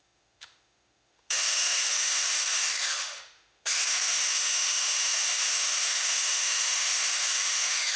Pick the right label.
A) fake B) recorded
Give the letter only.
A